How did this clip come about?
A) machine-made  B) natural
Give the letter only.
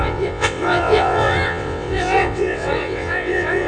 A